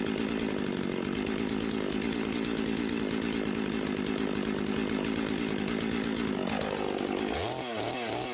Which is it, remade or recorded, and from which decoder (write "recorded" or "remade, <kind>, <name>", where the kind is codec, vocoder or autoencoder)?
recorded